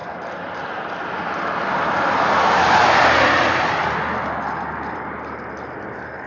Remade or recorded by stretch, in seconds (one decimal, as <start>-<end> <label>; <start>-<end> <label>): 0.0-6.3 recorded

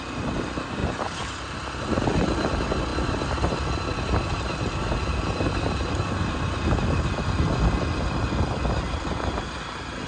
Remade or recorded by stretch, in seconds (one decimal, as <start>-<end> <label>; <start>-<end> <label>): 0.0-0.8 recorded; 0.8-2.0 remade; 2.0-10.1 recorded

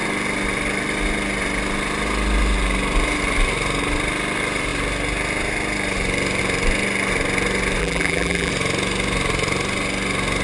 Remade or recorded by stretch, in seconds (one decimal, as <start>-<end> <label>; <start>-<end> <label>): 0.0-7.8 recorded; 7.8-8.5 remade; 8.5-10.4 recorded

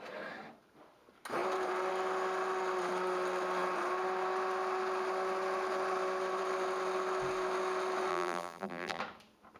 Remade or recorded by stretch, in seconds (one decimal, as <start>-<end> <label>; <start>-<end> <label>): 0.0-8.1 recorded; 8.1-9.0 remade; 9.0-9.6 recorded

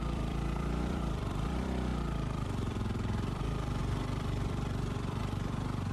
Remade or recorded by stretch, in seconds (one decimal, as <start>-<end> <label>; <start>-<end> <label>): 0.0-5.9 remade